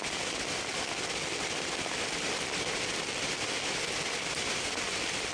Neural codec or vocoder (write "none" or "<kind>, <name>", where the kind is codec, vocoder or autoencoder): none